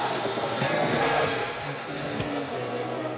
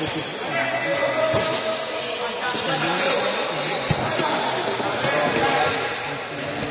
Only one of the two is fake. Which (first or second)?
first